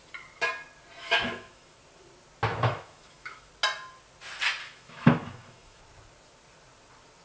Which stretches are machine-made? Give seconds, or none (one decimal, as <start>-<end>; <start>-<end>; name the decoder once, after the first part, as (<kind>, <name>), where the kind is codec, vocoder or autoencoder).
1.0-1.8 (autoencoder, DAC-VAE); 2.5-3.5; 4.6-5.8